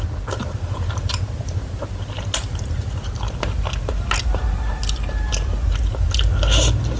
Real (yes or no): yes